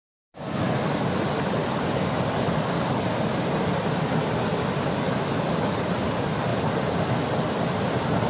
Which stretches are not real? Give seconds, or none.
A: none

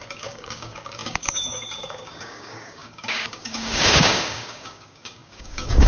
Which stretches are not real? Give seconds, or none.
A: 0.0-5.9

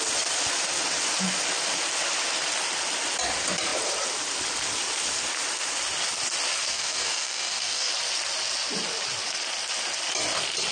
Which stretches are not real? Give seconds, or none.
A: 6.7-7.9